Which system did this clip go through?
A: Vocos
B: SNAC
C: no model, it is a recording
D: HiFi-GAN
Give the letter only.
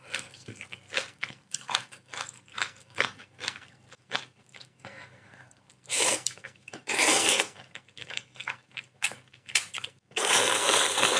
B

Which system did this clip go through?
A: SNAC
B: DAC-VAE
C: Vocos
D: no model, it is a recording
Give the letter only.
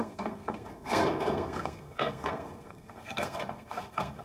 A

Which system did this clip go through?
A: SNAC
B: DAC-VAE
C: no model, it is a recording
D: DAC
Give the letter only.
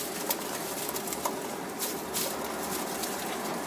C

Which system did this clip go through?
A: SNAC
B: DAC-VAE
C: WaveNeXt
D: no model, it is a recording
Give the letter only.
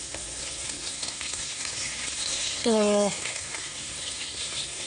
A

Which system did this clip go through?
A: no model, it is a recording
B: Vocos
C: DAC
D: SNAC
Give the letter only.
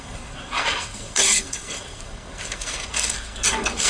D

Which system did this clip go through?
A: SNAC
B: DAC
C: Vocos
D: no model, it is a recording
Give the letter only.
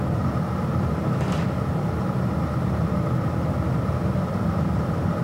D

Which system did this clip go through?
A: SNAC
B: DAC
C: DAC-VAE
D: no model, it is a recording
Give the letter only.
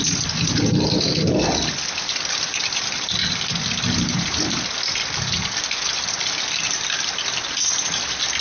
D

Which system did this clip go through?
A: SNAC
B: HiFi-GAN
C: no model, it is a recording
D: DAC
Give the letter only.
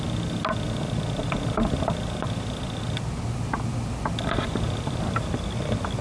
C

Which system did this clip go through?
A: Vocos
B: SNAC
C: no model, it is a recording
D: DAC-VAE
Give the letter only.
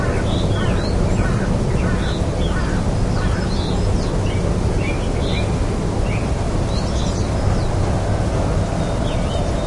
C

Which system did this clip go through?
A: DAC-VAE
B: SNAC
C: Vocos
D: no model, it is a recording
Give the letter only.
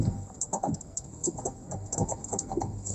B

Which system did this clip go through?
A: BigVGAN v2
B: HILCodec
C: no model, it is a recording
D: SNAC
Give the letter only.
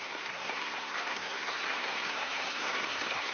D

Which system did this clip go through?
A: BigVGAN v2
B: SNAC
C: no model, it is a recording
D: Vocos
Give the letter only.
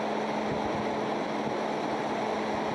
C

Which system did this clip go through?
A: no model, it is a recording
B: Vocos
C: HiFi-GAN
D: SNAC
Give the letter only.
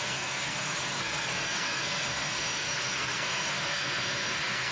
D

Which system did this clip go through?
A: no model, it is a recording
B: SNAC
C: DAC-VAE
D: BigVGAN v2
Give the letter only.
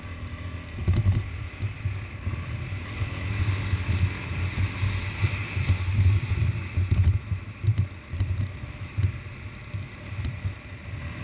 A